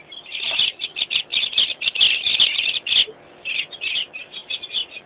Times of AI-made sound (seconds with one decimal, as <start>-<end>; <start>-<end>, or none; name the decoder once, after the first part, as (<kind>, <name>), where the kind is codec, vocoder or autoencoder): 0.0-1.3 (vocoder, BigVGAN v2); 3.5-5.1